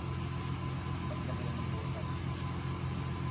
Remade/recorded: recorded